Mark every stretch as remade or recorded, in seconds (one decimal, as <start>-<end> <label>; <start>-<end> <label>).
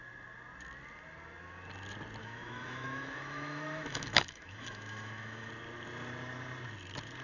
0.0-2.2 recorded; 2.2-5.5 remade; 5.5-7.2 recorded